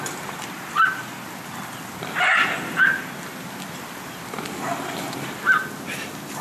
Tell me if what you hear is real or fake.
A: real